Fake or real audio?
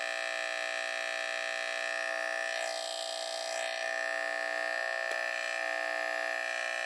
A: real